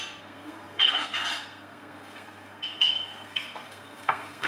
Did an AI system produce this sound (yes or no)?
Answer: yes